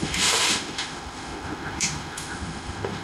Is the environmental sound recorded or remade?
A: remade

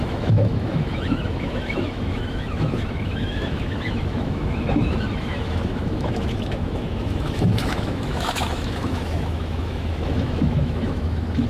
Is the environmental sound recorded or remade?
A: remade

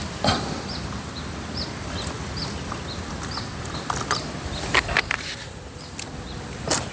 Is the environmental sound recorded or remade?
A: recorded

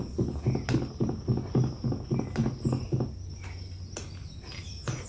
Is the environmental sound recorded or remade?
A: recorded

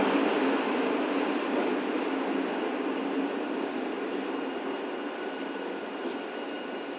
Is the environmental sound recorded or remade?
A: recorded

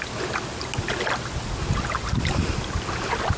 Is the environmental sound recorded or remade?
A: recorded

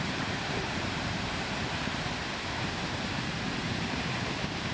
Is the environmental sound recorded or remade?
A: remade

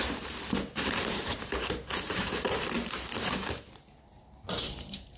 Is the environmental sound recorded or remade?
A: remade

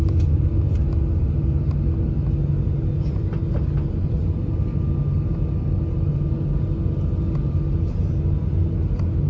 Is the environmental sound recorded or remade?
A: recorded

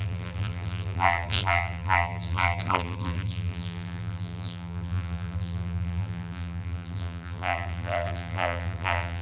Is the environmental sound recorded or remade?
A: remade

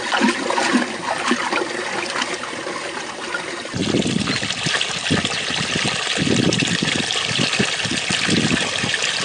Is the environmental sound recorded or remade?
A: recorded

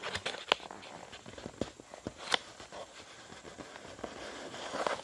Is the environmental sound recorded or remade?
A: recorded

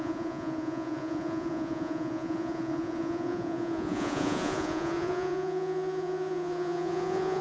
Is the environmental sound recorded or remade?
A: remade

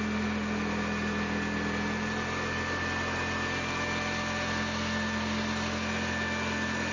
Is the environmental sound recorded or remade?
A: recorded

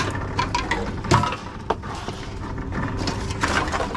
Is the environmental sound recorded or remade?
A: recorded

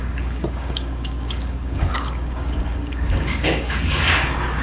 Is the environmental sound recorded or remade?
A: remade